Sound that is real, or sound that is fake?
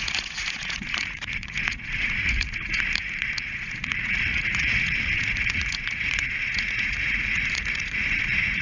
fake